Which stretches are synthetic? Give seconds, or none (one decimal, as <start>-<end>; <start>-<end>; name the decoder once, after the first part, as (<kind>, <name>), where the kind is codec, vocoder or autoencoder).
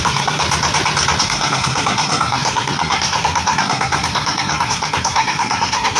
0.0-0.4 (codec, SNAC); 1.2-6.0